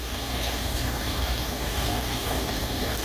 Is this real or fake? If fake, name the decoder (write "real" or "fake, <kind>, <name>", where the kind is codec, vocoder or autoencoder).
fake, codec, DAC